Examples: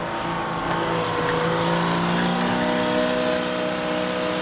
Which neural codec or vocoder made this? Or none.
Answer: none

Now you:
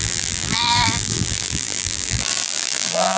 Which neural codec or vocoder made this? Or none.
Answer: vocoder, BigVGAN v2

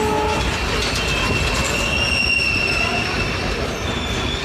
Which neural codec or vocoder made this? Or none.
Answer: none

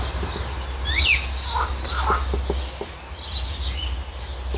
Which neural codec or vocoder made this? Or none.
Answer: none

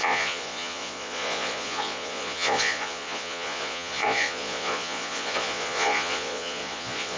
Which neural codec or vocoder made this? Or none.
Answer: vocoder, Vocos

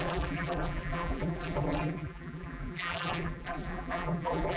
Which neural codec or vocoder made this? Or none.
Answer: vocoder, BigVGAN v2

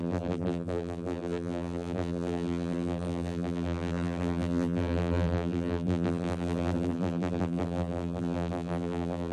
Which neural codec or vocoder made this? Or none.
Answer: vocoder, BigVGAN v2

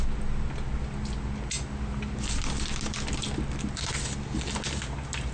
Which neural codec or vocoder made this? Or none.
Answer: none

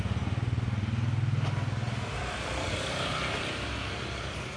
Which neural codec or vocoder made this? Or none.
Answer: none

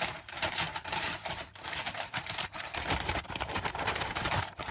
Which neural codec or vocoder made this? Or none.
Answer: vocoder, BigVGAN v2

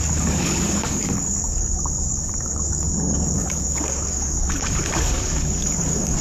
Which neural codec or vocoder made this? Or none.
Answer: codec, DAC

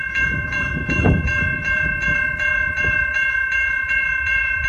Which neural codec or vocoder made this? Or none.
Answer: vocoder, BigVGAN v2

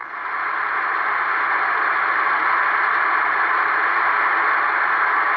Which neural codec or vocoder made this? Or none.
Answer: none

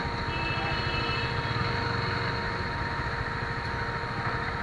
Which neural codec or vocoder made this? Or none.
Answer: none